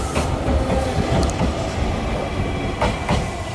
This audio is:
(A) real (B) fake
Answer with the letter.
A